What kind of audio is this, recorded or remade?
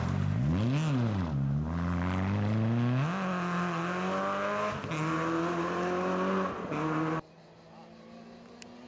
recorded